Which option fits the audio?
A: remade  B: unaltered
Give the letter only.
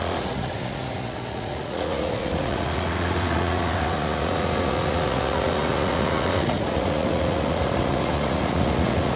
A